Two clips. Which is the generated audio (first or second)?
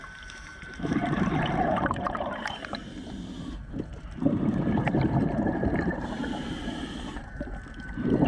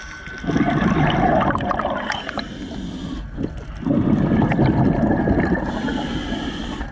first